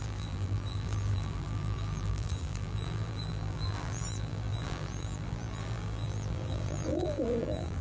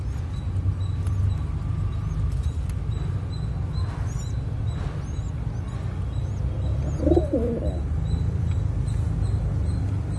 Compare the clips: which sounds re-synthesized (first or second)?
first